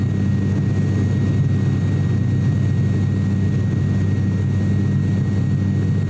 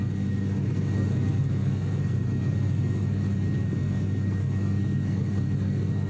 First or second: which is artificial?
second